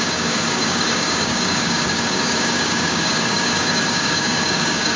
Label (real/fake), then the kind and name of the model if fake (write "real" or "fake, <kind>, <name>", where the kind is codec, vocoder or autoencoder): fake, codec, DAC